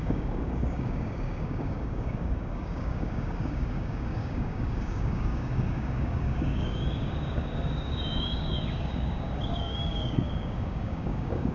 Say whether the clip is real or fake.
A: fake